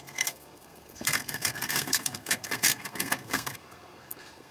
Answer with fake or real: fake